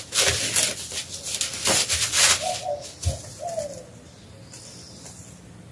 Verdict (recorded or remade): recorded